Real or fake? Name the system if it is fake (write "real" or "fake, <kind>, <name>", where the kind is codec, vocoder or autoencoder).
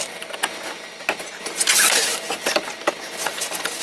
real